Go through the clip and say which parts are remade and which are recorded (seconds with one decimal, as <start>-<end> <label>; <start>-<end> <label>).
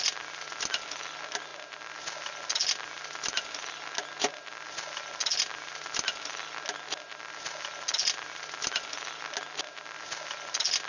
0.0-10.9 recorded